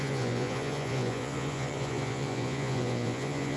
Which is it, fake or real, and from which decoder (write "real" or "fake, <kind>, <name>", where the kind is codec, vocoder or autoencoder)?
fake, vocoder, Vocos